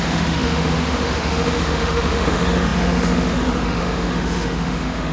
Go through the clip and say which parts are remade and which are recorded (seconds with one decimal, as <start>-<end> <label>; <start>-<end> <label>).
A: 0.0-5.1 remade

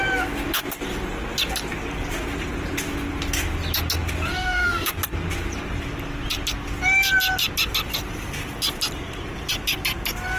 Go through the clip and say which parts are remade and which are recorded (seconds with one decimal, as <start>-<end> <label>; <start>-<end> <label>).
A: 0.0-4.3 recorded; 4.3-4.9 remade; 4.9-10.4 recorded